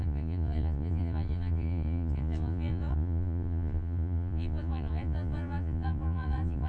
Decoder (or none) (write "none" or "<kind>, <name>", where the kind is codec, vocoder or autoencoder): vocoder, Vocos